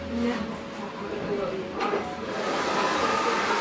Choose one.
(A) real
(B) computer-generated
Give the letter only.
A